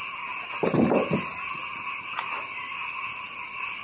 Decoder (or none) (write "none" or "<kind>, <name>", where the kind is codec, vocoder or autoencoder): none